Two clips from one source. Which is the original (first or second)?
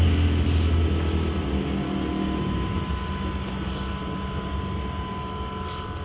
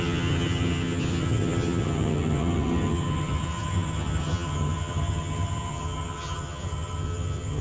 first